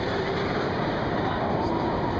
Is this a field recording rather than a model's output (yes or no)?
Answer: no